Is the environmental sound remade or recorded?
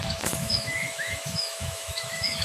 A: remade